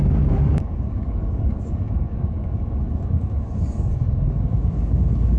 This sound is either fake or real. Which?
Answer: fake